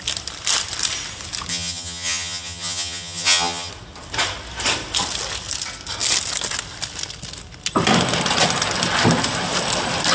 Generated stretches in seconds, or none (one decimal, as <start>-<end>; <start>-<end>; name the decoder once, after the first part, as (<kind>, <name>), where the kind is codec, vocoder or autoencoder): 1.5-3.7 (vocoder, HiFi-GAN)